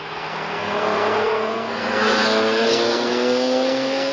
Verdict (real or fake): fake